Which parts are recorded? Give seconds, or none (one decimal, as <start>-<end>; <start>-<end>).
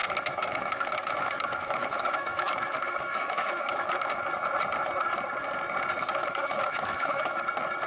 4.2-6.2; 7.4-7.9